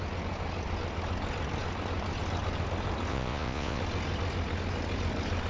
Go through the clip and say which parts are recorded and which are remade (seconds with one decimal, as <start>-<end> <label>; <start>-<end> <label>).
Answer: 0.0-3.1 recorded; 3.1-3.8 remade; 3.8-5.5 recorded